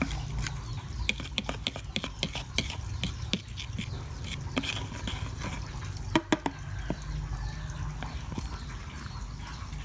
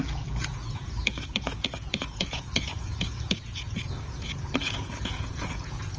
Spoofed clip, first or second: second